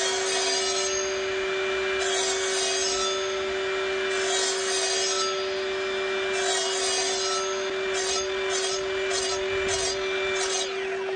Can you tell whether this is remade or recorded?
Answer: recorded